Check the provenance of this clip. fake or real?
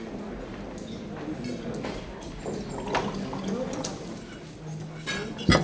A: real